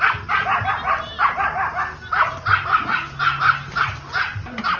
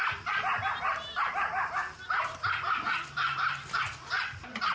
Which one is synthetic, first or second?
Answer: second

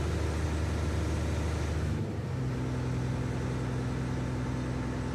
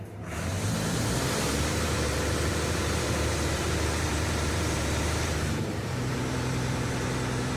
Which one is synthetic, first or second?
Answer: second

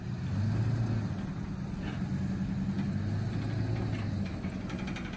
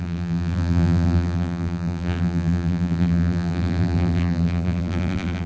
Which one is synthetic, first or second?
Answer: second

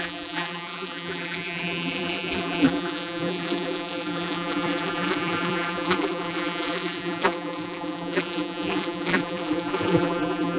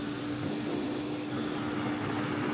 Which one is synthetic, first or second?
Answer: first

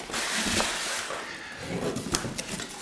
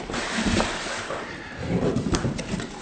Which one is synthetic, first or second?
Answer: second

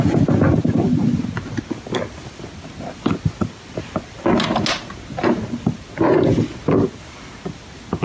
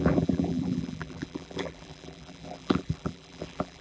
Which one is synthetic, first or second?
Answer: second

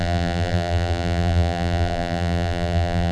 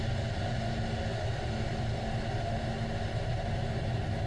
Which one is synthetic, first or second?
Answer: first